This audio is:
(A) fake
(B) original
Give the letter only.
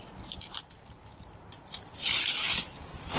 B